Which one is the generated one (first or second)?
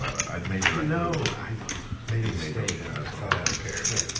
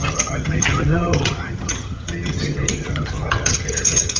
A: second